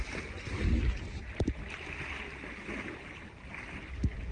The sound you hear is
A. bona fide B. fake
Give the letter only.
A